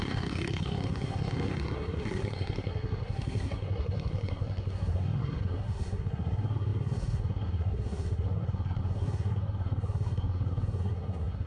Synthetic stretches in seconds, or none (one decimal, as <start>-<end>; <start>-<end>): 0.0-11.5

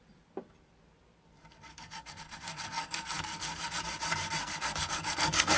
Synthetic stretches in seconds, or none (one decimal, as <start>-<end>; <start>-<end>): 1.7-3.8; 4.4-5.6

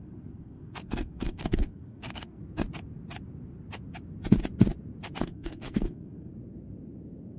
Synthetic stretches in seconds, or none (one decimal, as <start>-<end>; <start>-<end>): 0.0-2.4; 5.2-6.3

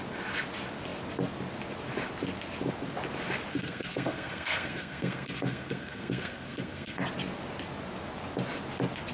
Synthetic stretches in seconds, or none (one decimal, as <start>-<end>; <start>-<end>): 3.5-7.0

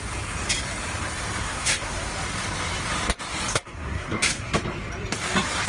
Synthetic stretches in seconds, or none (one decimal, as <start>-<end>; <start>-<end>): 1.4-2.1; 3.5-4.5

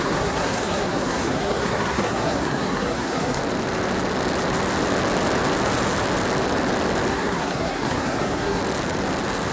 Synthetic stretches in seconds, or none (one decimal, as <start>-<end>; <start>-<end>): 0.0-3.4; 7.1-8.6

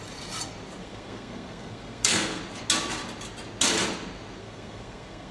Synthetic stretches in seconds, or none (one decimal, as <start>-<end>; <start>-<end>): 0.8-2.4; 4.4-5.3